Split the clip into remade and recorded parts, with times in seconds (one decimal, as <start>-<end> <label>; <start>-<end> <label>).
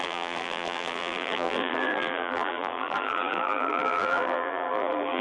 0.0-5.2 remade